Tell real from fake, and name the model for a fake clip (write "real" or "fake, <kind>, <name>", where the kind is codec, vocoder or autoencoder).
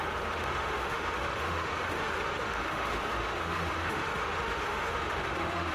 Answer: fake, autoencoder, DAC-VAE